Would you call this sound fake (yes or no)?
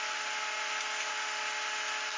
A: no